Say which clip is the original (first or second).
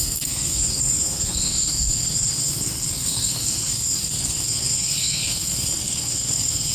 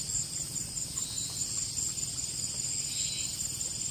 second